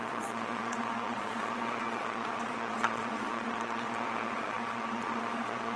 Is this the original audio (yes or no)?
no